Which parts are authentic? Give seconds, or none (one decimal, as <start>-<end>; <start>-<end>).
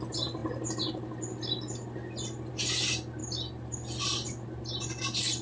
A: 0.0-5.4